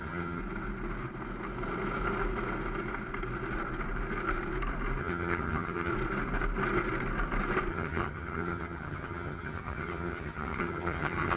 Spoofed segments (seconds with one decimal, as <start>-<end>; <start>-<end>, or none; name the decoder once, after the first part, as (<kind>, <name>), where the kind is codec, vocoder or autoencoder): 0.0-0.4 (vocoder, HiFi-GAN); 5.0-5.9; 7.7-11.4